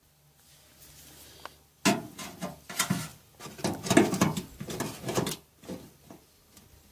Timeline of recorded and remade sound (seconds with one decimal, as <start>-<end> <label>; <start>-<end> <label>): 0.0-6.9 recorded